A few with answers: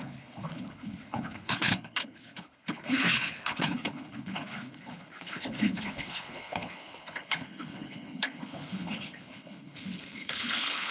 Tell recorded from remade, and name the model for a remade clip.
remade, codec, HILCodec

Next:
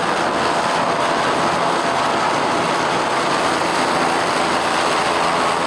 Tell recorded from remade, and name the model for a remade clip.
recorded